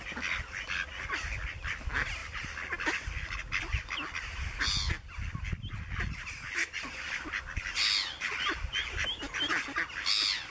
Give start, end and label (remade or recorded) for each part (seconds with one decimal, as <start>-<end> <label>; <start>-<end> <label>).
0.0-10.5 recorded